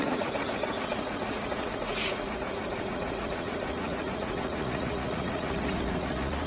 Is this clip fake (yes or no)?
yes